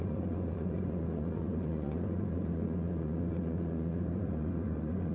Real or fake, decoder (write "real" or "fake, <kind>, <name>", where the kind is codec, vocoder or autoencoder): fake, vocoder, Vocos